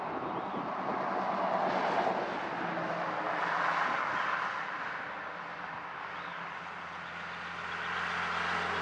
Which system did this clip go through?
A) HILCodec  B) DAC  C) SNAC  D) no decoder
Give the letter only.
D